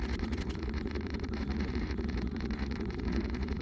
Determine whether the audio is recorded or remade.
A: remade